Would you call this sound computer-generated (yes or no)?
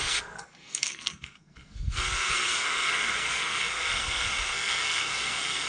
yes